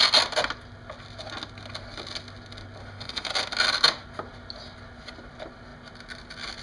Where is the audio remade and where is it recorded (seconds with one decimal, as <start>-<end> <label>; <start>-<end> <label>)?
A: 0.0-2.8 recorded; 2.8-3.3 remade; 3.3-6.6 recorded